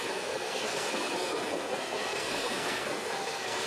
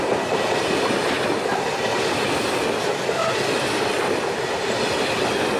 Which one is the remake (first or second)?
first